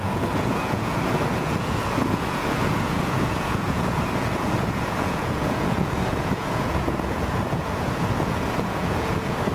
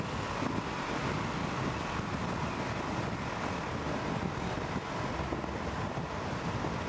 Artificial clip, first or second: first